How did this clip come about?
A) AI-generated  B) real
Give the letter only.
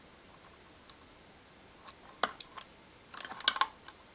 B